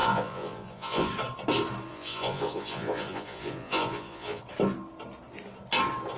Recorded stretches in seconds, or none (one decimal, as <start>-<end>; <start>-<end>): 1.1-1.9; 4.4-6.2